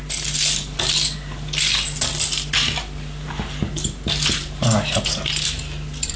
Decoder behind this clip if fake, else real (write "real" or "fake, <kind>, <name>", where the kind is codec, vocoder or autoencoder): real